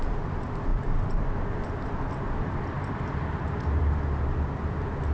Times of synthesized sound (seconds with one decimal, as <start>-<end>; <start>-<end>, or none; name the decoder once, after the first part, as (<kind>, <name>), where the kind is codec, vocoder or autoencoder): none